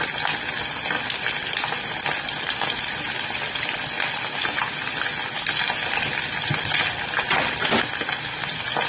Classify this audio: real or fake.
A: real